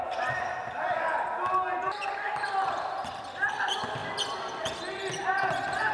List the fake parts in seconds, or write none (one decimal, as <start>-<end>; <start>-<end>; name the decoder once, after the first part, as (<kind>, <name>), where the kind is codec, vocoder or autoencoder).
none